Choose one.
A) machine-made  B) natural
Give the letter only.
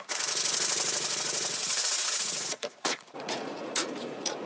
A